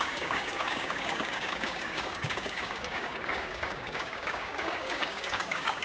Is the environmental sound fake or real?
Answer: fake